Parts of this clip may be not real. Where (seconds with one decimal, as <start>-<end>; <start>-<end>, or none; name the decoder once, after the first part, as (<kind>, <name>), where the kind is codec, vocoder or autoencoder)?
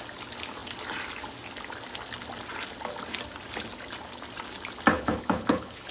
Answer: 4.9-5.9 (codec, HILCodec)